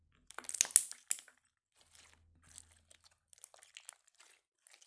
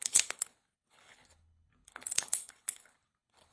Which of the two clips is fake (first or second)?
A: second